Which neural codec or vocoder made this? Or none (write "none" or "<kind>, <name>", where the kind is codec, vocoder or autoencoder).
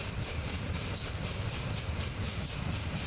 vocoder, BigVGAN v2